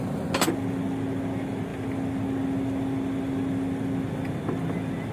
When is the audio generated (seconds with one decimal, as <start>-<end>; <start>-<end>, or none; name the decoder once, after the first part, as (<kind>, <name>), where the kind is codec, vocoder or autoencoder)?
none